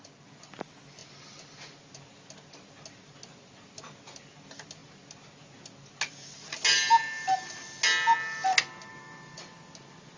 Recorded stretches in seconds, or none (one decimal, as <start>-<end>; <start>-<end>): 0.0-8.9; 9.5-10.2